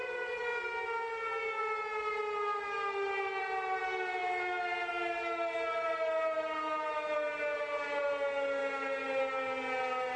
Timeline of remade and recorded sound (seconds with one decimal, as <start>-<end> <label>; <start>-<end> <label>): 0.0-10.2 recorded